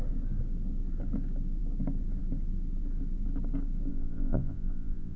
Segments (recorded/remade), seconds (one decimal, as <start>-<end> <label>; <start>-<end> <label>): 0.0-3.9 recorded; 3.9-5.2 remade